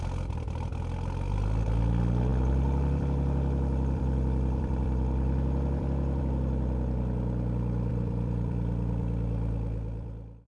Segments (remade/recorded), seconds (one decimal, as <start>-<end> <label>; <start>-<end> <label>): 0.0-2.3 recorded; 2.3-6.2 remade; 6.2-7.9 recorded; 7.9-10.5 remade